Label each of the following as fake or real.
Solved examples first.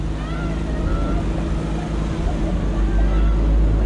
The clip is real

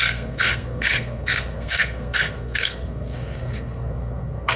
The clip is fake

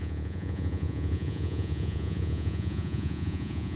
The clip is fake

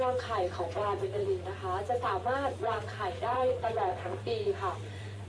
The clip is fake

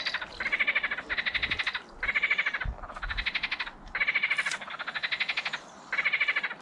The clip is real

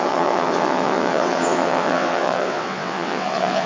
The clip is fake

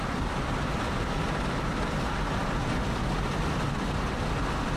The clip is real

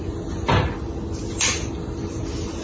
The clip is real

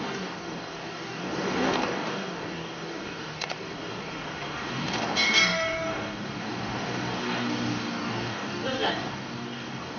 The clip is fake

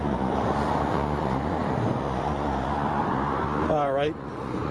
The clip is fake